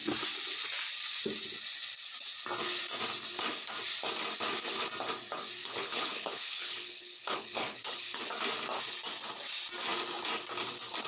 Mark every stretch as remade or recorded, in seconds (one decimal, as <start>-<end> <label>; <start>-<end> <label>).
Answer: 0.0-5.6 recorded; 5.6-8.3 remade; 8.3-11.1 recorded